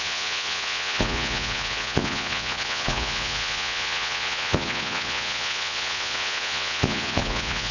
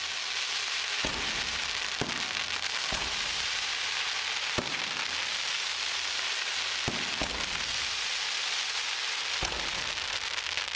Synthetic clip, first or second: first